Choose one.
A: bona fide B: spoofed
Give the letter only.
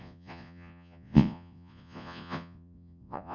B